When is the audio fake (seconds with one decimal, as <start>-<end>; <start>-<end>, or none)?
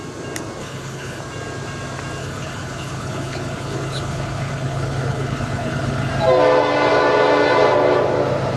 0.6-1.2; 2.2-6.1